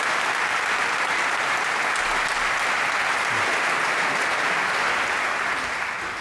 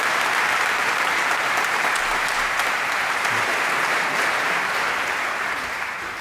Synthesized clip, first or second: second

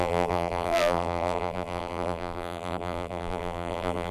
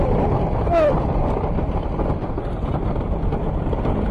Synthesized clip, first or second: first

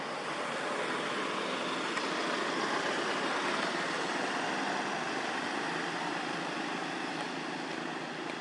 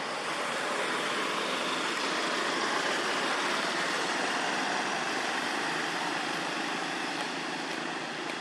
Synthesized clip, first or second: second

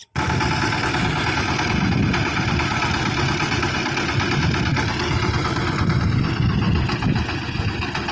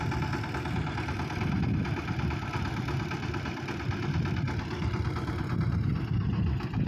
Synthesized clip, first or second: second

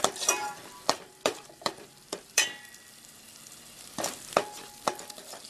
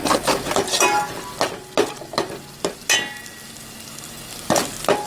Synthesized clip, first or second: first